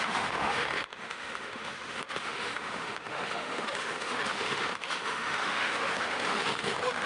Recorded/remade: remade